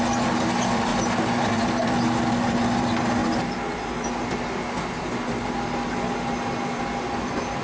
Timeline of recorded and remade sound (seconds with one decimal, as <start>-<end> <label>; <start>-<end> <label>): 0.0-7.6 recorded